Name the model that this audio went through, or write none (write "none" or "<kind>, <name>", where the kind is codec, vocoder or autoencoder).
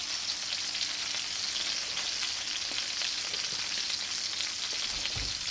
none